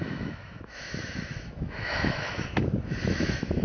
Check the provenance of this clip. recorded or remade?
remade